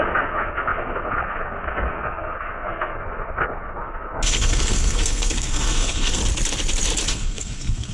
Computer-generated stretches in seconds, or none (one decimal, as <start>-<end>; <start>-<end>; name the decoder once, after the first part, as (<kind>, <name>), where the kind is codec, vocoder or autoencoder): 0.0-6.2 (codec, SNAC); 7.1-7.9